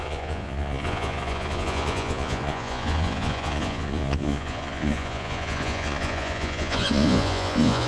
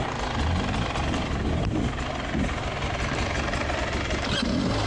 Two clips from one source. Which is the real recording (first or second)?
second